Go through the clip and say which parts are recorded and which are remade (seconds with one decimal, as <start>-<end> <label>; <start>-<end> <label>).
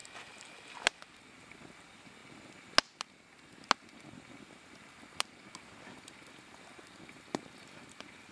0.0-8.3 recorded